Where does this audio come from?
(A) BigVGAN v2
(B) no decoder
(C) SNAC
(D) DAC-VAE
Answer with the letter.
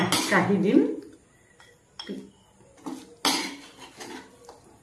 B